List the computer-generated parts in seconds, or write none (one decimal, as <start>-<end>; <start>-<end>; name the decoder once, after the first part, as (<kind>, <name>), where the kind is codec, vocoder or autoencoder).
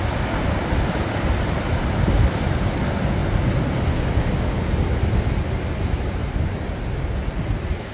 none